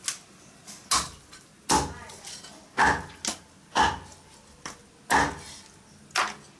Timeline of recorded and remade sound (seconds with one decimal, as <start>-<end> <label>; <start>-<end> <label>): 0.0-6.6 recorded